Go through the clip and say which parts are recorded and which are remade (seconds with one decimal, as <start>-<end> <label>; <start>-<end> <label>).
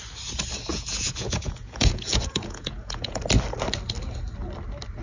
0.0-0.7 recorded; 0.7-3.2 remade; 3.2-5.0 recorded